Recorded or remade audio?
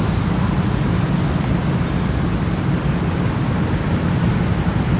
recorded